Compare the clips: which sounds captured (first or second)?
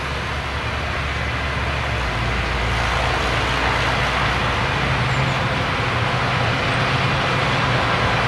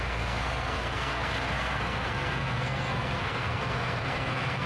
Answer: first